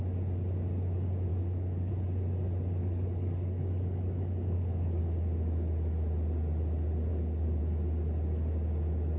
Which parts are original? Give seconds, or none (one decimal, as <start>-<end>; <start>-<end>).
0.0-1.3; 1.9-2.8; 5.0-7.1; 7.6-9.2